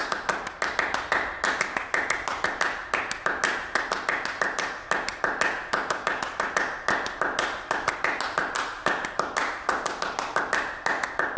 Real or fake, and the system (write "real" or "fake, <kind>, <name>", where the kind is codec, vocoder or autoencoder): real